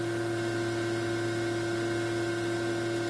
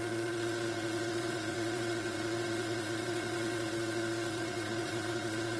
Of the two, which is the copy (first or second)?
second